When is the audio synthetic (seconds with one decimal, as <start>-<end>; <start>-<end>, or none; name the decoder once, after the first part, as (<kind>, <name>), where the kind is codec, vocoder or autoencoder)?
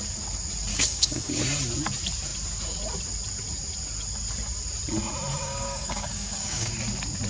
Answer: 0.7-1.4 (codec, DAC); 5.3-6.7